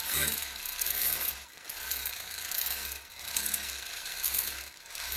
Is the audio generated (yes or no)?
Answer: yes